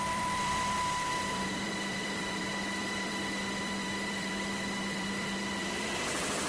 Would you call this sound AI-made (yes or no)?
yes